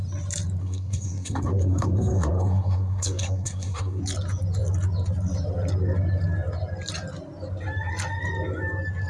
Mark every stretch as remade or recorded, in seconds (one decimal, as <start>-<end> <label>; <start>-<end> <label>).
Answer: 0.0-0.6 recorded; 0.6-4.0 remade; 4.0-9.1 recorded

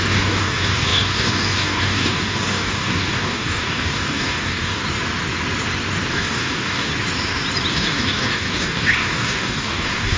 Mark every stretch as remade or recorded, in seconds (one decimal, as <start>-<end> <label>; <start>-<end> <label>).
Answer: 0.0-4.8 remade; 4.8-6.1 recorded; 6.1-6.9 remade; 6.9-7.7 recorded; 7.7-10.2 remade

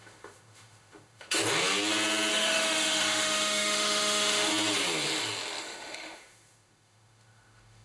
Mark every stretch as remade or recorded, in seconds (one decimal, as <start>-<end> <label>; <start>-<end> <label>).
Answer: 0.0-1.4 remade; 1.4-2.3 recorded; 2.3-4.5 remade; 4.5-5.6 recorded; 5.6-7.8 remade

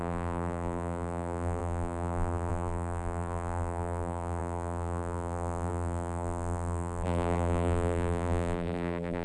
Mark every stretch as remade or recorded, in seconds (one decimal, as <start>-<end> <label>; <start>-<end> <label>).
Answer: 0.0-9.2 remade

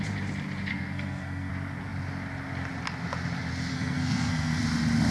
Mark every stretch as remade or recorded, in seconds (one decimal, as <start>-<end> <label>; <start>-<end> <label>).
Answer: 0.0-0.7 recorded; 0.7-1.5 remade; 1.5-3.7 recorded; 3.7-4.6 remade; 4.6-5.1 recorded

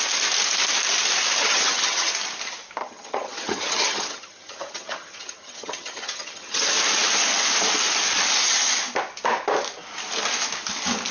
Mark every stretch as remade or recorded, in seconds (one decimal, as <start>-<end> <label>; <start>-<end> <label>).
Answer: 0.0-1.4 recorded; 1.4-2.1 remade; 2.1-2.8 recorded; 2.8-6.6 remade; 6.6-11.1 recorded